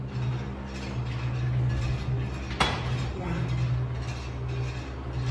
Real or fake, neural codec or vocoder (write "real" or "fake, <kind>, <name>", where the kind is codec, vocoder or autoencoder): real